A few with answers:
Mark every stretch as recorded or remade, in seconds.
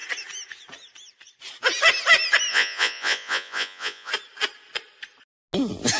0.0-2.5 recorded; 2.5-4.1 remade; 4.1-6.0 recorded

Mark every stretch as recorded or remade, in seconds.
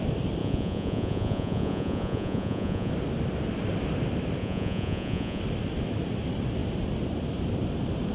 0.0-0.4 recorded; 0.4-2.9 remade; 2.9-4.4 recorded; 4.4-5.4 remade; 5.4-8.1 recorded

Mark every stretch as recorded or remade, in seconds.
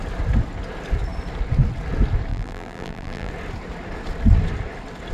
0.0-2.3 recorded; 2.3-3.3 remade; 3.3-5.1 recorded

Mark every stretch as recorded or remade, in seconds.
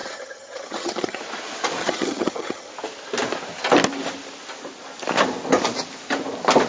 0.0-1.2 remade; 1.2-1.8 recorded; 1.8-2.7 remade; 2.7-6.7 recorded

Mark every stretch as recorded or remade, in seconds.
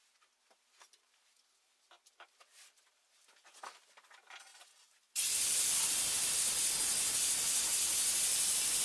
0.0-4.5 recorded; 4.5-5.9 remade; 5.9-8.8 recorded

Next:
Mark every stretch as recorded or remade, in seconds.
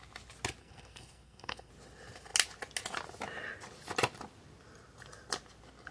0.0-0.6 recorded; 0.6-1.7 remade; 1.7-5.9 recorded